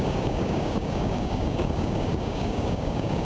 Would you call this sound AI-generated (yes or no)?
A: yes